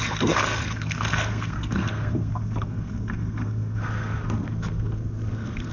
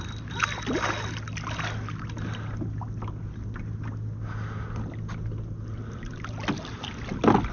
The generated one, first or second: first